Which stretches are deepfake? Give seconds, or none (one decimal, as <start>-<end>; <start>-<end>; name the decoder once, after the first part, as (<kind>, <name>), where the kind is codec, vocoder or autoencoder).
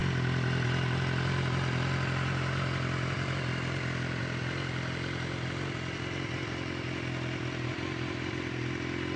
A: none